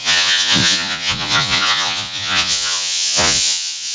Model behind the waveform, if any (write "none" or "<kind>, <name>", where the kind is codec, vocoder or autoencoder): vocoder, Vocos